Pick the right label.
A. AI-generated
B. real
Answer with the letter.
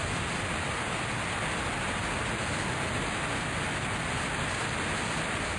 B